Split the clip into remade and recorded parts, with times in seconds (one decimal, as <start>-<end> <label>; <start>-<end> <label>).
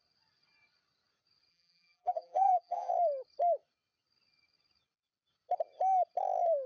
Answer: 0.0-1.5 recorded; 1.5-2.9 remade; 2.9-6.7 recorded